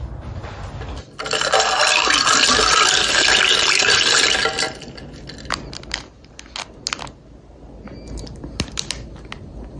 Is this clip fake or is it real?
real